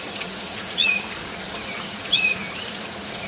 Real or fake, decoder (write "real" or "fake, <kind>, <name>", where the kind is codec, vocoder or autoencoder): fake, vocoder, Vocos